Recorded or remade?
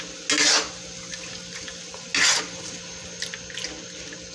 recorded